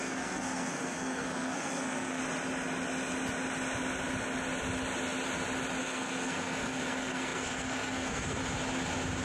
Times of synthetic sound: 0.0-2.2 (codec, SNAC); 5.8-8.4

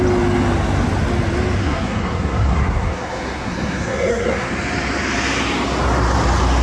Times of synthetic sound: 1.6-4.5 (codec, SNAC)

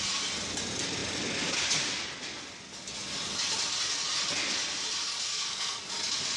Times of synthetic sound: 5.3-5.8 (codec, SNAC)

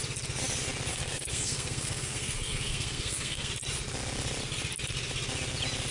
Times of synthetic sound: 0.9-3.5 (codec, SNAC)